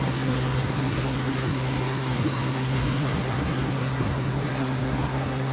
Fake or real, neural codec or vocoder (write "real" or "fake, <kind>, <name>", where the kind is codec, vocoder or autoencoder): fake, codec, SNAC